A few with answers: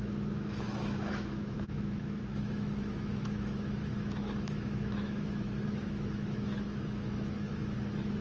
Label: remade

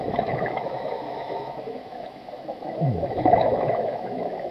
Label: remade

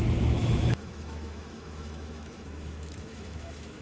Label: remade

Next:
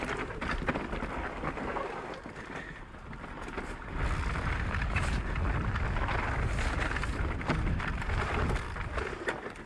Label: recorded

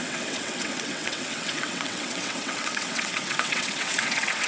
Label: remade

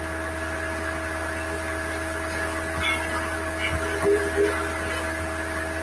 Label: recorded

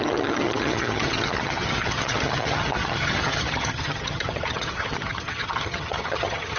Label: remade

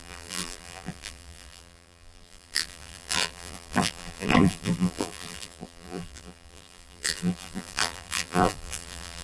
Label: remade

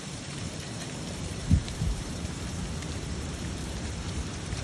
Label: remade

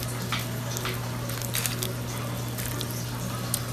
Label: recorded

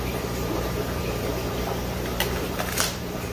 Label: remade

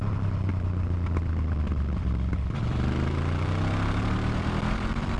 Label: remade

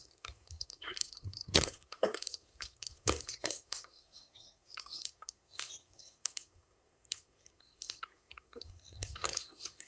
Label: remade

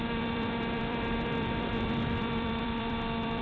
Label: remade